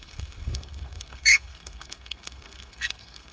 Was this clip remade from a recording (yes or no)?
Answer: yes